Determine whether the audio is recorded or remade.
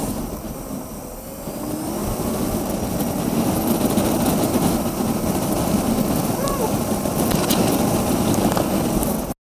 recorded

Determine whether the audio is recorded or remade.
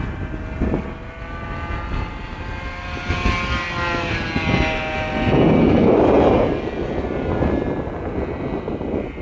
recorded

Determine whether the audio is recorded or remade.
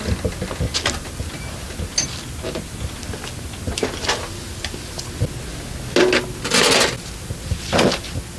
recorded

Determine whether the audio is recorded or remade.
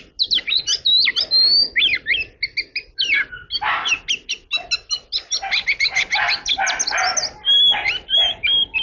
recorded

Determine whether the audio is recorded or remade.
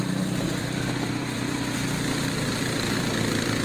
remade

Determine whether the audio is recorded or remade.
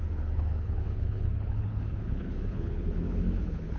remade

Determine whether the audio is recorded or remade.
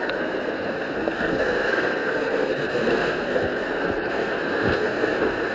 remade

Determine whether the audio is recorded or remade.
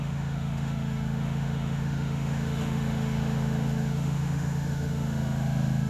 remade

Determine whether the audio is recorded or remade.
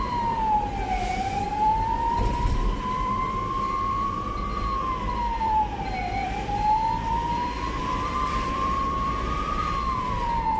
remade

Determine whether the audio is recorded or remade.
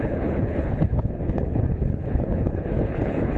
remade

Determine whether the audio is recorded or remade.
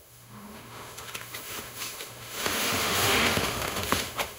remade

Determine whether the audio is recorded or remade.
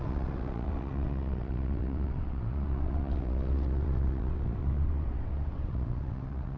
remade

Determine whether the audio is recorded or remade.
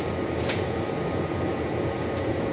remade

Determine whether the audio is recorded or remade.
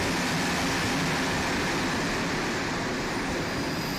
recorded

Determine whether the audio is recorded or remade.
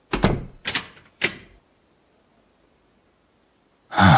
recorded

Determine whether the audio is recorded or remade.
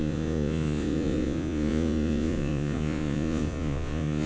remade